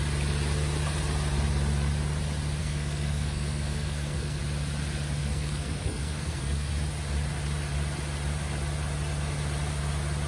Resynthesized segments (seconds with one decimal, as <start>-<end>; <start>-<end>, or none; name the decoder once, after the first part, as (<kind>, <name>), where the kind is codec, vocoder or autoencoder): 2.6-4.4 (codec, SNAC); 5.2-6.7